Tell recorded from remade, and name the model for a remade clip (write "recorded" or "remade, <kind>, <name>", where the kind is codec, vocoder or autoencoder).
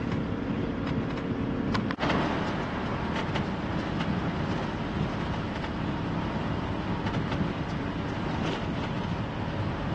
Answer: recorded